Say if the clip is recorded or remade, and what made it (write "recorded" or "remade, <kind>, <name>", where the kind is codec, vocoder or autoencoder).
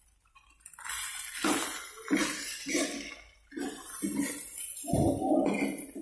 remade, vocoder, BigVGAN v2